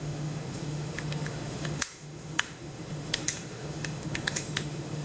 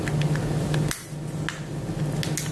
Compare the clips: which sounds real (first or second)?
second